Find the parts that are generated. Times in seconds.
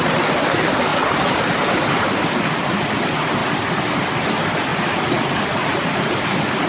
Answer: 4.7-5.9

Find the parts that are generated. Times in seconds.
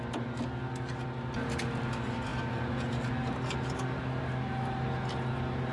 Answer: none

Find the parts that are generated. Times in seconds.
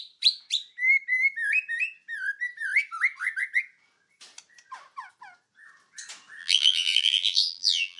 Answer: 6.4-8.0